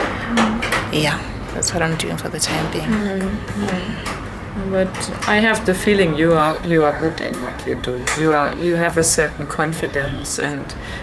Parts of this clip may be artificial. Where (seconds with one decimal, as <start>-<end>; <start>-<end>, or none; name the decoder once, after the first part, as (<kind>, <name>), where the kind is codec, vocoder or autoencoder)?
3.0-3.7 (codec, SNAC); 6.4-10.6